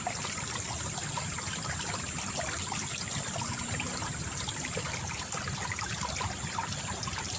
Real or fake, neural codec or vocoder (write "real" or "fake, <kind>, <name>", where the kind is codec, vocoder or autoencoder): real